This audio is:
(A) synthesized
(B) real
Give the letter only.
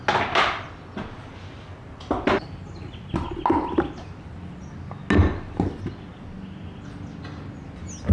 B